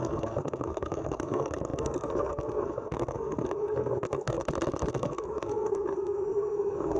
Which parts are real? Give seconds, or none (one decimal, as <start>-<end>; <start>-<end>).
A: 4.4-4.9